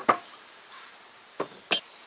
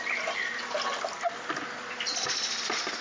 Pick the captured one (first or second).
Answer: second